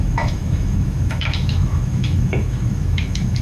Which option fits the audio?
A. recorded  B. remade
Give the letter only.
B